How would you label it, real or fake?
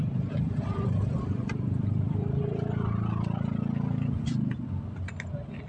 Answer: real